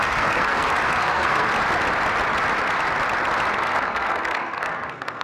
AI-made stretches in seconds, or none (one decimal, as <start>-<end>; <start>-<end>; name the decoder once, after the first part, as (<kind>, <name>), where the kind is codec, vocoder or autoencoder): 0.0-1.5 (codec, SNAC); 3.6-5.2